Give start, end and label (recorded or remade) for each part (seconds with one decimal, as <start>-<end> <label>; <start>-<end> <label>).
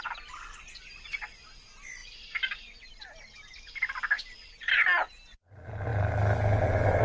0.0-7.0 recorded